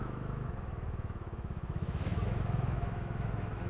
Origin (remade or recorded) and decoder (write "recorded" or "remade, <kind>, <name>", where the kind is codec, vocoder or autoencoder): remade, autoencoder, DAC-VAE